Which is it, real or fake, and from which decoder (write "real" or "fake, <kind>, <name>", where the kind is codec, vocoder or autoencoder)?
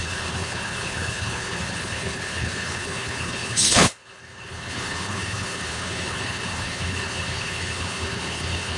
fake, codec, HILCodec